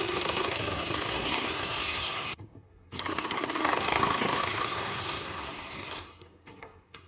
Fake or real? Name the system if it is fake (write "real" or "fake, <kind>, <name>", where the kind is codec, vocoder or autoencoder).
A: fake, codec, SNAC